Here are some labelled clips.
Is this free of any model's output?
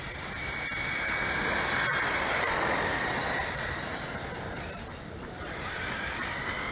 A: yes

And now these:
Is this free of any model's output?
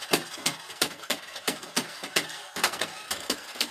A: no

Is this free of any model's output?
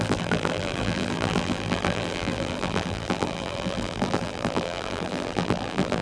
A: no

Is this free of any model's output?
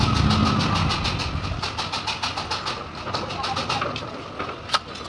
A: yes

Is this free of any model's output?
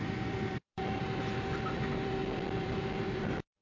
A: no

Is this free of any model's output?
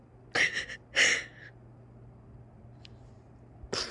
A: yes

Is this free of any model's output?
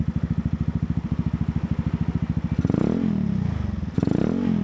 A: yes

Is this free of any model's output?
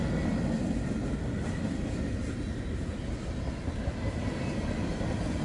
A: yes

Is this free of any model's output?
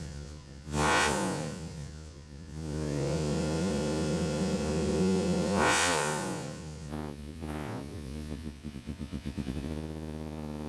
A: no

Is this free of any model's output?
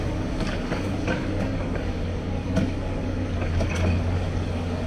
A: no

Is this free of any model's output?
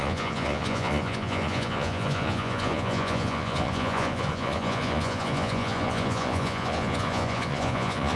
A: no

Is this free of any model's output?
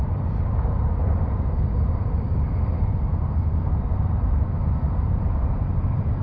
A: no